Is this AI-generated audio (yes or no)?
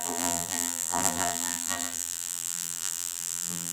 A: yes